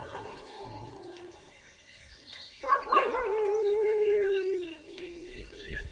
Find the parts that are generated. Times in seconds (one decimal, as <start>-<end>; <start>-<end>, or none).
0.0-2.7; 3.6-5.9